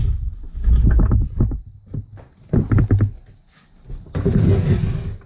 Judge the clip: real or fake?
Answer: real